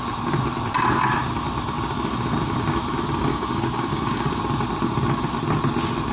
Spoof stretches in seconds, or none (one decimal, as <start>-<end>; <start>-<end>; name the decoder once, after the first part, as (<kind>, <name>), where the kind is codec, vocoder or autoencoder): 3.3-4.3 (codec, DAC)